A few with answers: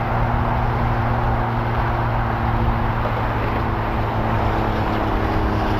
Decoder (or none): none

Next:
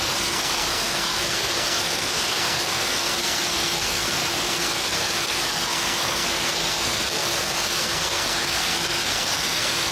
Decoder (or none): codec, SNAC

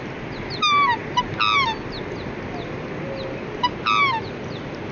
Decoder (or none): none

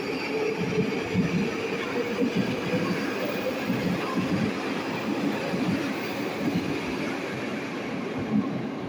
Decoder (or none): none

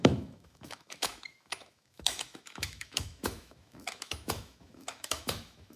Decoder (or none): autoencoder, DAC-VAE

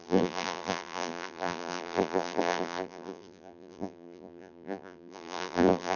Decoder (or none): vocoder, BigVGAN v2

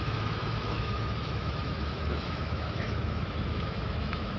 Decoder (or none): autoencoder, DAC-VAE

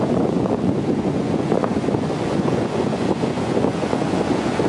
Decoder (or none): vocoder, Vocos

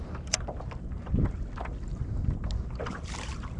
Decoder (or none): none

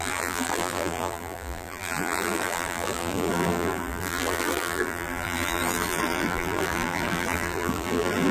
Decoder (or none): vocoder, BigVGAN v2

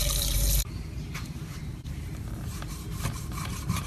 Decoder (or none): vocoder, BigVGAN v2